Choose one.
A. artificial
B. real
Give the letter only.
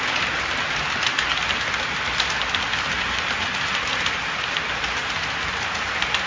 B